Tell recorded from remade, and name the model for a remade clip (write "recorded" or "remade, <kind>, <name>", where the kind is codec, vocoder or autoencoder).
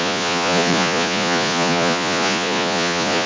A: remade, vocoder, Vocos